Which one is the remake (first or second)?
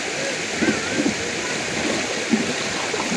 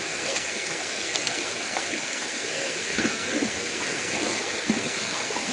second